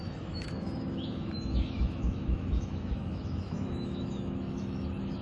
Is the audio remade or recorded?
remade